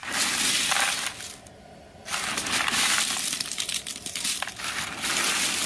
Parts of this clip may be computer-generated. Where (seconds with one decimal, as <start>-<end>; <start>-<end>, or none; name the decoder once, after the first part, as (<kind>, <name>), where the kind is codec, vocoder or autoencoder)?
none